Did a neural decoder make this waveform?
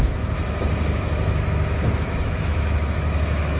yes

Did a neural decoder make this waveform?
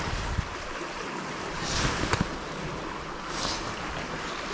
no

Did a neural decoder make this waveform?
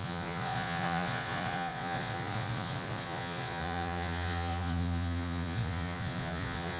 yes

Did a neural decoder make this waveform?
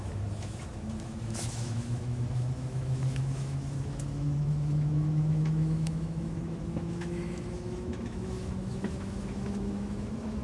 yes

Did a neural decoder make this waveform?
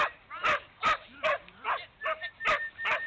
no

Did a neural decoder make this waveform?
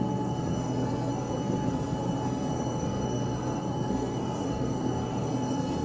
yes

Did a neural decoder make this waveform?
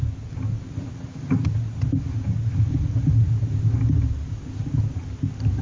no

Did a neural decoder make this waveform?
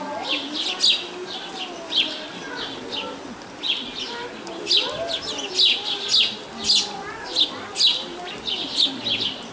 no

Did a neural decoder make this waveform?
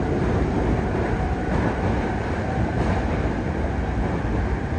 yes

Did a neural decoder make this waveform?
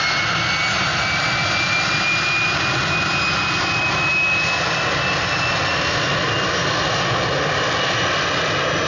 no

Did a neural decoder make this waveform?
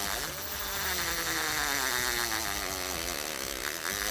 no